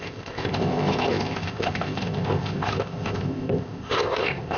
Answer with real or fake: fake